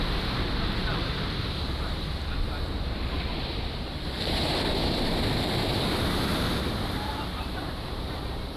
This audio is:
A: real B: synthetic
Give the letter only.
B